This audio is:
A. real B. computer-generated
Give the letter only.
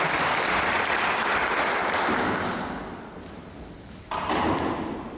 A